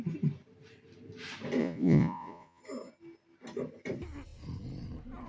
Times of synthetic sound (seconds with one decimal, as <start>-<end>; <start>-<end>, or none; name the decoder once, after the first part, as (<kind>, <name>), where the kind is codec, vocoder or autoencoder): 1.6-2.6 (vocoder, Vocos)